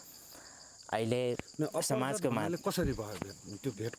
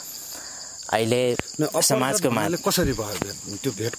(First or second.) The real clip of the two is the first